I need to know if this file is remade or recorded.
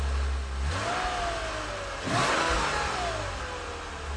recorded